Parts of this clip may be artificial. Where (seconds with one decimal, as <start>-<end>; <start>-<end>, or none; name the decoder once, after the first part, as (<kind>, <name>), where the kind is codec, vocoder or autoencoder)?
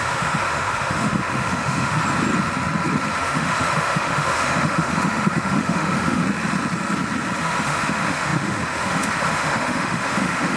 0.0-2.0 (autoencoder, DAC-VAE); 3.2-6.2; 7.4-10.6